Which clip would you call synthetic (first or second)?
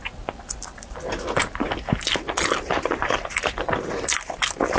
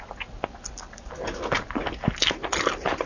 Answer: first